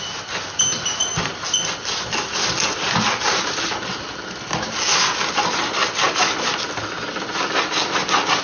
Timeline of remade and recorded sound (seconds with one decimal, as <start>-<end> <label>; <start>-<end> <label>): 0.0-8.4 recorded